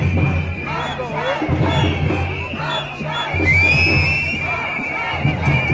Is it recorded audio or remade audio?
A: recorded